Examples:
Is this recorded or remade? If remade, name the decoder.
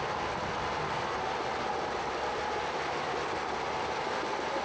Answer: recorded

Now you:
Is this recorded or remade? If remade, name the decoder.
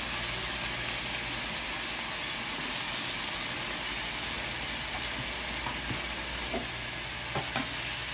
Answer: recorded